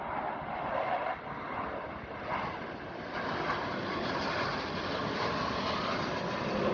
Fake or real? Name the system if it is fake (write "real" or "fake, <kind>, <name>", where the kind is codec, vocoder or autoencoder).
real